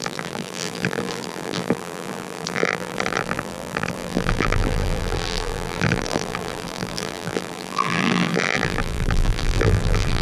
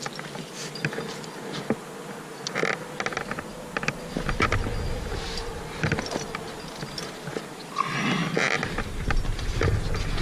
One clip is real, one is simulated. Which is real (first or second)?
second